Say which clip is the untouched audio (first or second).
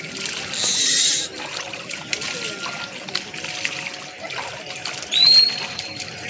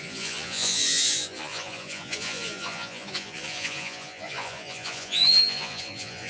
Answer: first